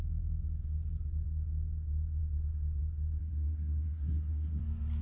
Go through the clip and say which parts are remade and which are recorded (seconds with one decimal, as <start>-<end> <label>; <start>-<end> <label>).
0.0-3.2 recorded; 3.2-4.6 remade; 4.6-5.0 recorded